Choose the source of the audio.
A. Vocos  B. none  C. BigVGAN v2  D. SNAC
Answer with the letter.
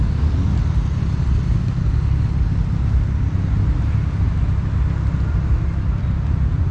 B